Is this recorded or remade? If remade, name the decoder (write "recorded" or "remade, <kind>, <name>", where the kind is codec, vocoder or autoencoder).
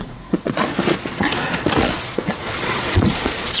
remade, vocoder, Vocos